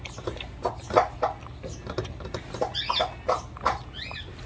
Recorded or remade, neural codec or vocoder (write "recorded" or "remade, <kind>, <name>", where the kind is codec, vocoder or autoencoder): recorded